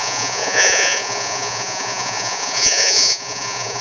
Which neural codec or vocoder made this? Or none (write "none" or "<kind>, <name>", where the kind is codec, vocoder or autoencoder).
vocoder, Vocos